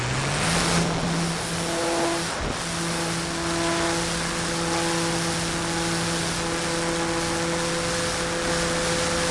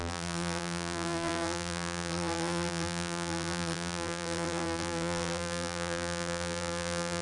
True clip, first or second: first